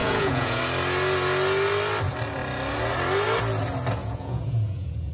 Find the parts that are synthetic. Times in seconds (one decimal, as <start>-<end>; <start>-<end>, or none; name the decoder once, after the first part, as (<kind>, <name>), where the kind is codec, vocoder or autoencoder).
0.0-0.6 (vocoder, Vocos); 4.0-5.1

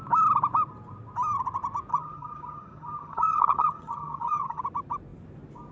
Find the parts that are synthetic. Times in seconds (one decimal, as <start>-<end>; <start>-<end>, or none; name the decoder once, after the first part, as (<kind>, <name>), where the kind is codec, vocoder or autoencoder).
1.9-4.6 (vocoder, HiFi-GAN)

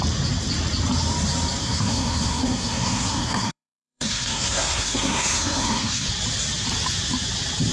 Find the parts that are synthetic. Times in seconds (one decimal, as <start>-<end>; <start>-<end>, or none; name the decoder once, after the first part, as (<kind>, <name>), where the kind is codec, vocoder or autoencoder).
1.6-6.1 (codec, SNAC)

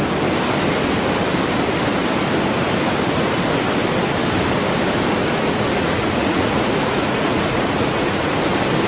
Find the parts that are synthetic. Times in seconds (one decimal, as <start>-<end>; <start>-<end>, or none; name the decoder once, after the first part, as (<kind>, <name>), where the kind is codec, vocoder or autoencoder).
5.2-8.4 (vocoder, Vocos)

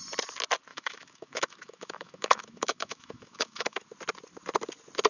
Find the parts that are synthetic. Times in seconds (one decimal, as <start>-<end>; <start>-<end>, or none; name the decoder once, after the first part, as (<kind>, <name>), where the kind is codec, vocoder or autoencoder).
0.7-3.8 (autoencoder, DAC-VAE)

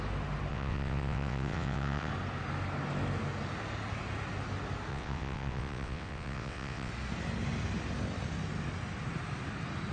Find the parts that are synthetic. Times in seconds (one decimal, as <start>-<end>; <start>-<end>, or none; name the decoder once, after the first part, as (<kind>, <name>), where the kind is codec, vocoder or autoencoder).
0.5-2.1 (vocoder, WaveNeXt); 4.9-6.9

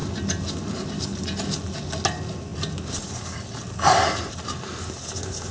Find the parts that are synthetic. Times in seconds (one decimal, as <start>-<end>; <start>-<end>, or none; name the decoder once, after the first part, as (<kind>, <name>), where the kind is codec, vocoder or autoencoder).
none